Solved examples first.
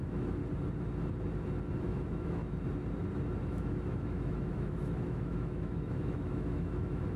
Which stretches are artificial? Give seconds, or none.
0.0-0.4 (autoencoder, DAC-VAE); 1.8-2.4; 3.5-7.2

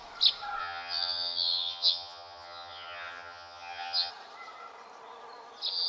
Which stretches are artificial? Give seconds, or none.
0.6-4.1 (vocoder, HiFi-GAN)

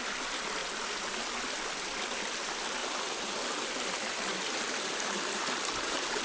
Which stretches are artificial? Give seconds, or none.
0.0-0.6 (vocoder, BigVGAN v2); 2.0-6.2

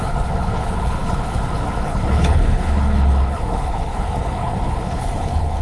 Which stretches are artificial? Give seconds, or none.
0.0-5.6 (codec, HILCodec)

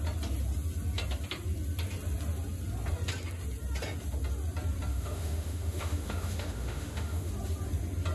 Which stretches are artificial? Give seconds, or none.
4.9-7.3 (autoencoder, DAC-VAE)

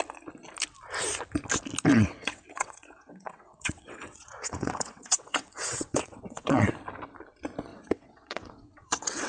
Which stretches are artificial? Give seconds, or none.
1.9-6.7 (vocoder, WaveNeXt); 7.7-9.3